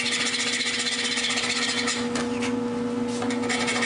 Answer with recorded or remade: recorded